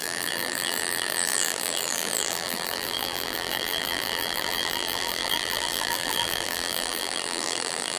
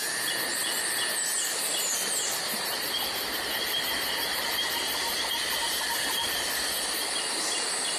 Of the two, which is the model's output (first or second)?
first